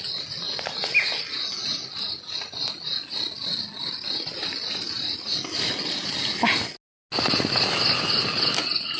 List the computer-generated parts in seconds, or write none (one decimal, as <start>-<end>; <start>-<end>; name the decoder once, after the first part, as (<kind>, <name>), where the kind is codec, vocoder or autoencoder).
none